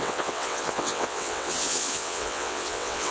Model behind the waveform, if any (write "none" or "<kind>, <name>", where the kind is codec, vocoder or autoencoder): vocoder, WaveNeXt